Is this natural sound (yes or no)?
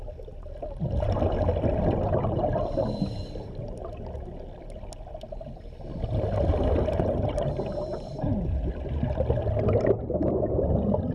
yes